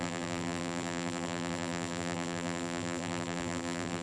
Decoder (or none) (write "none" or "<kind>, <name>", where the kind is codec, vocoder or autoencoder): vocoder, BigVGAN v2